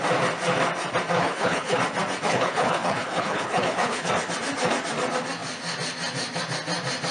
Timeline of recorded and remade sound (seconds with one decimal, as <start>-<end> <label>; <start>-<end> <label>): 0.0-1.2 recorded; 1.2-1.8 remade; 1.8-2.3 recorded; 2.3-4.1 remade; 4.1-7.1 recorded